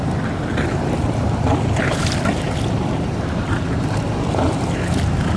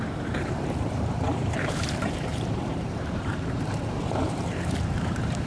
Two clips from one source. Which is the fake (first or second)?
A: second